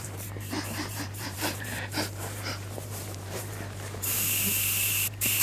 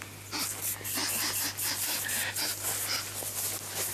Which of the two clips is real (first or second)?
second